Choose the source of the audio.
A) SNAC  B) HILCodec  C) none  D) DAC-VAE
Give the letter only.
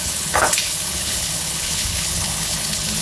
B